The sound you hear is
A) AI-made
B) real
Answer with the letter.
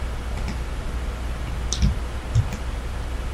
B